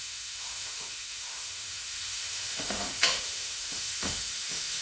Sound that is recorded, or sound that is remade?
remade